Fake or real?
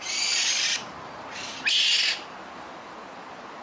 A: real